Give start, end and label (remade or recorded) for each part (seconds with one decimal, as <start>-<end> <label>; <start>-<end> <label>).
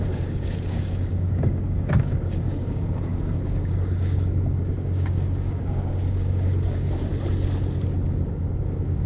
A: 0.0-7.1 remade; 7.1-8.3 recorded; 8.3-9.1 remade